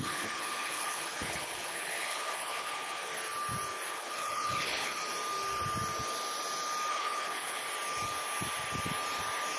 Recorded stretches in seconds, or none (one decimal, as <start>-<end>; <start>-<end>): 3.1-3.9; 5.0-6.9; 7.6-9.6